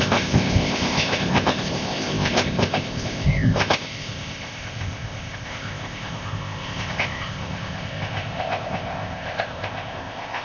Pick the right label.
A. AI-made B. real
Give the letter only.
A